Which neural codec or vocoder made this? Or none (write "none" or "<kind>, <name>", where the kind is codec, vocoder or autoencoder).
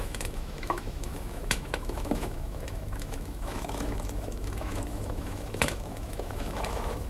autoencoder, DAC-VAE